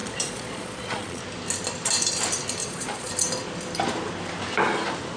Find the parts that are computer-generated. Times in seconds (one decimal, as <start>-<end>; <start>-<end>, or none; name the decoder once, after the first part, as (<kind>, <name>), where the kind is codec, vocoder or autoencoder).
0.0-1.2 (vocoder, Vocos); 2.6-3.1